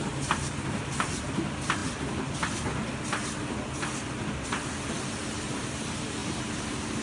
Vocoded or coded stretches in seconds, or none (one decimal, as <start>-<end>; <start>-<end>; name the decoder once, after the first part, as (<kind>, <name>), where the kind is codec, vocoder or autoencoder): 0.0-0.5 (vocoder, BigVGAN v2); 6.2-7.0